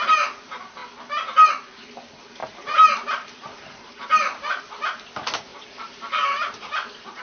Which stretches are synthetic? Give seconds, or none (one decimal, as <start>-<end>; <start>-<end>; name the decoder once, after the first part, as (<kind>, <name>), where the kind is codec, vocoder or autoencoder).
2.4-3.9 (vocoder, BigVGAN v2); 5.5-6.7

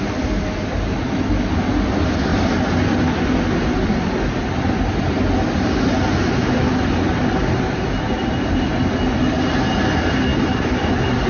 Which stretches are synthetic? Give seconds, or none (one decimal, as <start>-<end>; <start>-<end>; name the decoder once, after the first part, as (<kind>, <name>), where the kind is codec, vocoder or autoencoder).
10.3-11.3 (vocoder, BigVGAN v2)

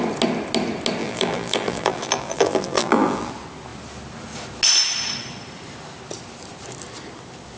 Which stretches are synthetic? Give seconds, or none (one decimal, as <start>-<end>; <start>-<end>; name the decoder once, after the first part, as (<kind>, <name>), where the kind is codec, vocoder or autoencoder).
1.0-3.3 (vocoder, BigVGAN v2)

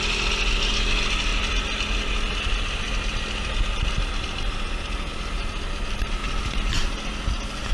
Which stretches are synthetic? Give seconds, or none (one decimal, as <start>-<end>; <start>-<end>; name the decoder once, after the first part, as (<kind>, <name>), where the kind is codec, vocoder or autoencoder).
none

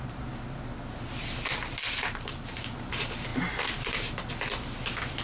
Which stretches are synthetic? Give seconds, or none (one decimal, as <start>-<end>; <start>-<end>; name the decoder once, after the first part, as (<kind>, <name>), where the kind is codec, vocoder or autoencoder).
1.9-2.7 (vocoder, BigVGAN v2); 3.3-4.3

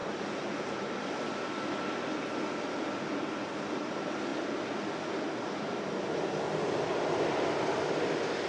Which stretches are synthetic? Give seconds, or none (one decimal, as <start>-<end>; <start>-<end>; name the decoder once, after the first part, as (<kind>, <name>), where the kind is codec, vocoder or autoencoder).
0.0-1.4 (vocoder, BigVGAN v2)